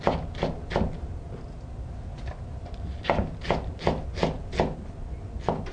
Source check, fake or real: real